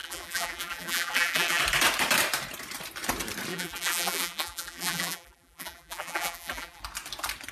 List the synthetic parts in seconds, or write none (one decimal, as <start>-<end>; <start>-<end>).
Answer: 0.0-1.6; 3.5-6.8